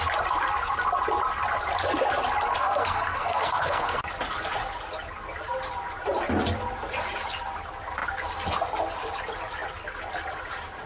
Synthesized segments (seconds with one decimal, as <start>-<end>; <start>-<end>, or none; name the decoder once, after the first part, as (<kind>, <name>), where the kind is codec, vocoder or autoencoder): 2.5-4.0 (codec, SNAC)